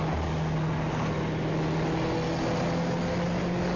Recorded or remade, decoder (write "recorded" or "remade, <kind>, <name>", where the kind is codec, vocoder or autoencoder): recorded